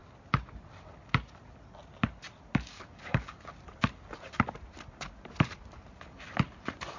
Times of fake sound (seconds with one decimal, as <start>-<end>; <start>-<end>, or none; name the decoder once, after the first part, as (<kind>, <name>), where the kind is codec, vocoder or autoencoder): 2.7-3.5 (codec, DAC)